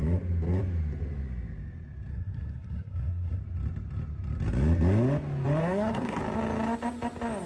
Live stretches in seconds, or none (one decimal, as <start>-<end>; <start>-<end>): 0.0-2.1; 3.4-5.6; 6.2-7.5